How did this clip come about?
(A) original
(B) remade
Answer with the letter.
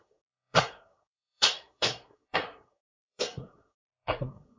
B